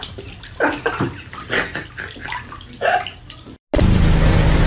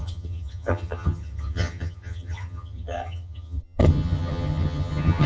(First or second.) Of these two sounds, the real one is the first